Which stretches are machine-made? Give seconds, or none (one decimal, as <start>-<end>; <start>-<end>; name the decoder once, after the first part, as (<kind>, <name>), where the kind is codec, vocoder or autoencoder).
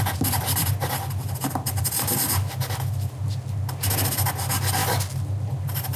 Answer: none